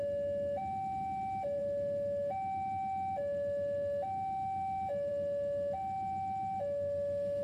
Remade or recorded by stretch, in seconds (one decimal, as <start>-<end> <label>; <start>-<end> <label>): 0.0-7.4 recorded